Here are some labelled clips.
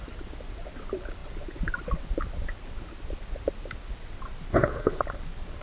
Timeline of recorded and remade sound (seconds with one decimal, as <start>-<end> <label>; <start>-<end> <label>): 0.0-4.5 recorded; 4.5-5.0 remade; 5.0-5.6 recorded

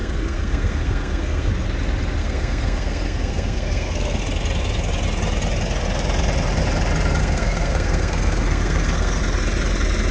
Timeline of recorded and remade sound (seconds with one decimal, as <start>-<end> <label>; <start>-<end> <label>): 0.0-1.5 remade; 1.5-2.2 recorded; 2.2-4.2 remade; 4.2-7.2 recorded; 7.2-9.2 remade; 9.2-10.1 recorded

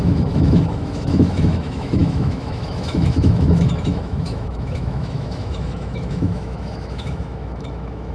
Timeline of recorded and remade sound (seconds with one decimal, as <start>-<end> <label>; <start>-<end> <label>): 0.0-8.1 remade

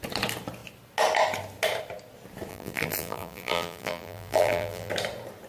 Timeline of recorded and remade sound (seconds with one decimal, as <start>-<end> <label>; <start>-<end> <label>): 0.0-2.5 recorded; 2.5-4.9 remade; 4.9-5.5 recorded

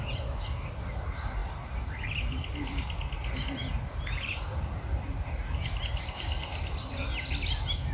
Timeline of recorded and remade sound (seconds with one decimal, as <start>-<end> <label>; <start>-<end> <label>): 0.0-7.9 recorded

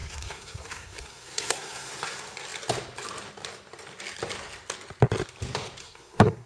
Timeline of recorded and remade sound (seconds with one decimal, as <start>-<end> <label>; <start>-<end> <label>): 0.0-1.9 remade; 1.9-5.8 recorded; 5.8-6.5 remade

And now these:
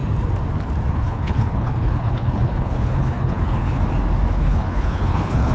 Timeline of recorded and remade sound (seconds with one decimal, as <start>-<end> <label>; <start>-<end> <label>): 0.0-0.9 recorded; 0.9-3.8 remade; 3.8-4.3 recorded; 4.3-5.5 remade